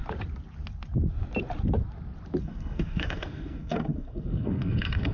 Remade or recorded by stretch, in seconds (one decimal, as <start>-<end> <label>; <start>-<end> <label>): 0.0-2.4 recorded; 2.4-5.1 remade